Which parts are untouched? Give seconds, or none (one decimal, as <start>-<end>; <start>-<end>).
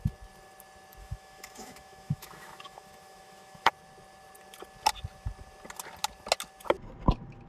0.0-1.0; 3.7-7.5